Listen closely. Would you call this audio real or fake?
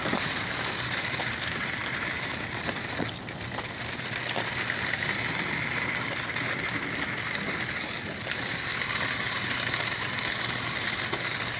real